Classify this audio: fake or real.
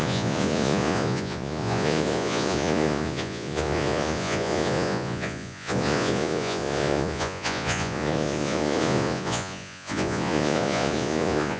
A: fake